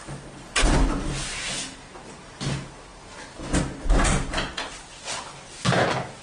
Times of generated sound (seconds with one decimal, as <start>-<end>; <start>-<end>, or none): none